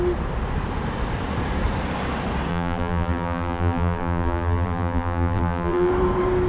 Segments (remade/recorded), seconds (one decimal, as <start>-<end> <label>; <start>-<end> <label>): 0.0-2.5 recorded; 2.5-5.9 remade; 5.9-6.5 recorded